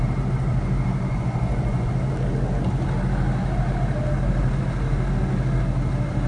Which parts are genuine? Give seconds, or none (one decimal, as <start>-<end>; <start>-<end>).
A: 0.0-1.1; 1.9-6.3